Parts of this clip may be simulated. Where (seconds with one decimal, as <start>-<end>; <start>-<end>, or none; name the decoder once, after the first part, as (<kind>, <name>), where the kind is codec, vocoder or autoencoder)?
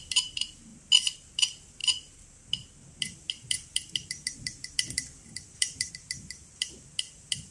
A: none